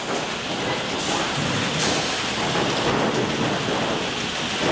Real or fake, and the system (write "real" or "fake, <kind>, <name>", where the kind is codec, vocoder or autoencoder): real